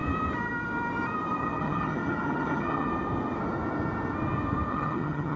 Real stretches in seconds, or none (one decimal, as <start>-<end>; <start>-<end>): 0.0-1.4; 2.9-4.7